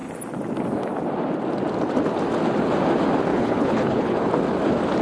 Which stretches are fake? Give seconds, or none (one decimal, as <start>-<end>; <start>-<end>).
3.3-4.3